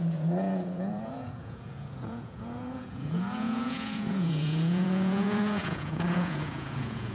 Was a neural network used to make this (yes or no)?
yes